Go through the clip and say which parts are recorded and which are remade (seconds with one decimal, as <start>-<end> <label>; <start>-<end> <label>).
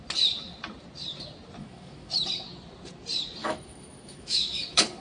0.0-1.6 recorded; 1.6-2.1 remade; 2.1-3.4 recorded; 3.4-5.0 remade